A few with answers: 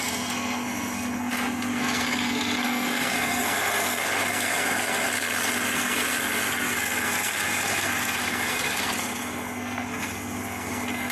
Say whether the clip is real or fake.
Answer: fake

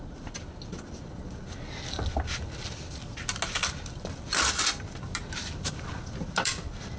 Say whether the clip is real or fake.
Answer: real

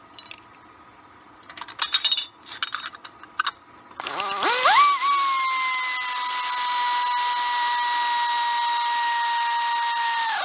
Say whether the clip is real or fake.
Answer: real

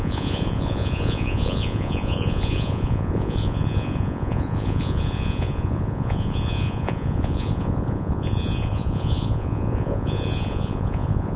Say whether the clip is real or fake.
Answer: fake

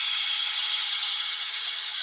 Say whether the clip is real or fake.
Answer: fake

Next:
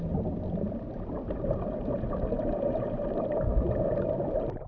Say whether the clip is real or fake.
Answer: real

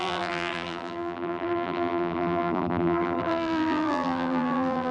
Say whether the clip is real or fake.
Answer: fake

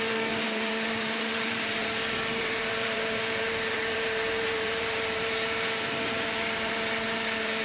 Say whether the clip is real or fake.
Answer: fake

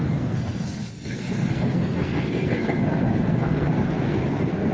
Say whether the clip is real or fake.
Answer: fake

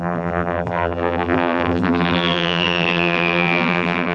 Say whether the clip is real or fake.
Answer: fake